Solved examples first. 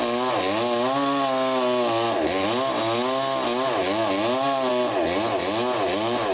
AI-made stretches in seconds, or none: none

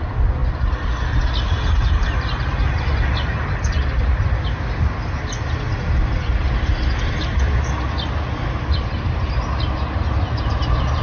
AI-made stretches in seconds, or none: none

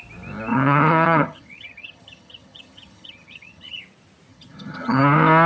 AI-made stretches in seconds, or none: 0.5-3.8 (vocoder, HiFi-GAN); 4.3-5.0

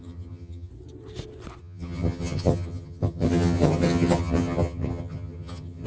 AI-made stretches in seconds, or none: 0.0-0.7 (vocoder, HiFi-GAN); 1.6-5.9